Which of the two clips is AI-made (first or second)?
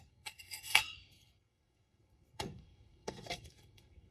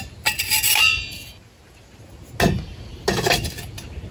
first